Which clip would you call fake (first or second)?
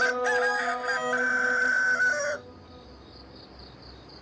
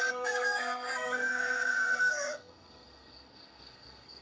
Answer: second